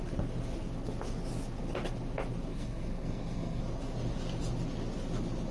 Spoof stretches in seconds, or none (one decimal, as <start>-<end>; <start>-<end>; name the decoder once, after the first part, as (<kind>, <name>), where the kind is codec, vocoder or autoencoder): 2.5-3.6 (codec, SNAC)